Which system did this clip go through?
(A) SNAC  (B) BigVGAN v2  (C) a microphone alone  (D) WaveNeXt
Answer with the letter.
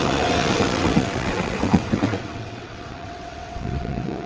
D